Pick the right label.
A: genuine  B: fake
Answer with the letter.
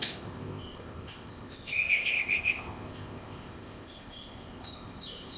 B